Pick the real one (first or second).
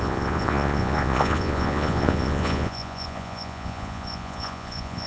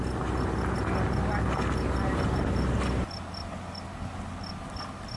second